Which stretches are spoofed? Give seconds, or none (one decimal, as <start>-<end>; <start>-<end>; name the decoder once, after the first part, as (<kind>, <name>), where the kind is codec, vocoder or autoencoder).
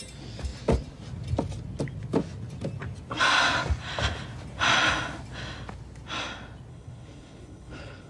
6.7-8.1 (codec, HILCodec)